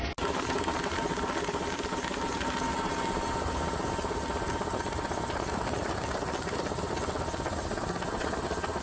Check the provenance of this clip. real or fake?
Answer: real